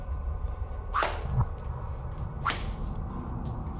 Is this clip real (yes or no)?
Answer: yes